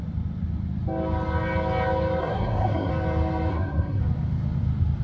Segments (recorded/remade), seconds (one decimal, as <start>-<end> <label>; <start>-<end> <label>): 0.0-2.2 recorded; 2.2-2.9 remade; 2.9-3.5 recorded; 3.5-4.0 remade; 4.0-5.0 recorded